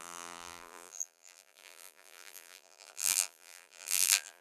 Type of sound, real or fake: fake